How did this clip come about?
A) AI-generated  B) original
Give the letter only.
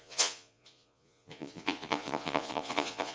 A